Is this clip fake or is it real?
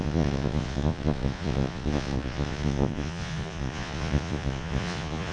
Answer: fake